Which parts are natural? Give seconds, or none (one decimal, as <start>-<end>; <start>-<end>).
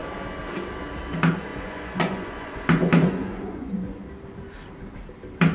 0.0-1.5; 4.1-5.5